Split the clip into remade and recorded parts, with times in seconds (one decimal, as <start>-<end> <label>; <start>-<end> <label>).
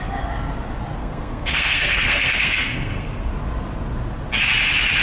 0.0-1.0 recorded; 1.0-3.3 remade; 3.3-5.0 recorded